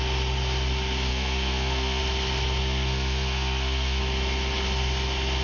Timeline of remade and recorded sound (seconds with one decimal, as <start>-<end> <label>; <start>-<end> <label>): 0.0-1.1 recorded; 1.1-2.0 remade; 2.0-2.6 recorded; 2.6-4.0 remade; 4.0-5.4 recorded